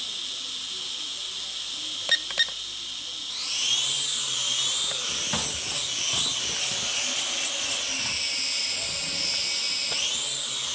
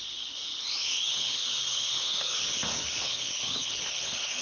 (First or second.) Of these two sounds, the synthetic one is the second